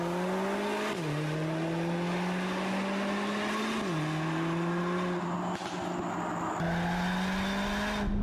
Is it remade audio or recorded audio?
recorded